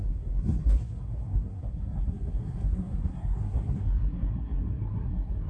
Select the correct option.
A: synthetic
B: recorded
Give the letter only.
A